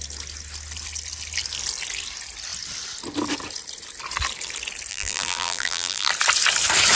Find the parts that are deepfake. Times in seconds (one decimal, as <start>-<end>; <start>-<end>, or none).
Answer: 4.9-6.1